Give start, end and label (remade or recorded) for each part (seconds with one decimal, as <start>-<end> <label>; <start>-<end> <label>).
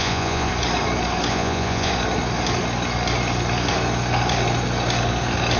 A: 0.0-0.5 remade; 0.5-1.3 recorded; 1.3-1.9 remade; 1.9-5.6 recorded